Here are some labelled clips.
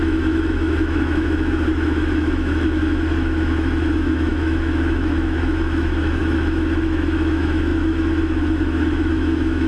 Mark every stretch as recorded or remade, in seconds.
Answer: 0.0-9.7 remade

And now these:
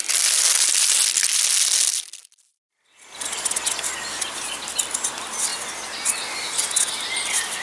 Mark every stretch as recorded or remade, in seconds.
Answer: 0.0-2.5 recorded; 2.5-4.7 remade; 4.7-7.6 recorded

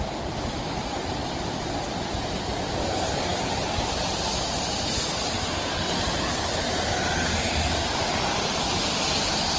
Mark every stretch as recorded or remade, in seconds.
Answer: 0.0-9.6 recorded